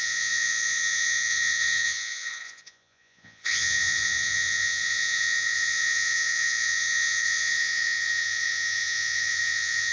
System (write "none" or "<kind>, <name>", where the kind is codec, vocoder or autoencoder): vocoder, Vocos